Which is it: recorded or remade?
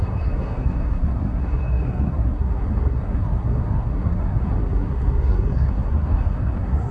remade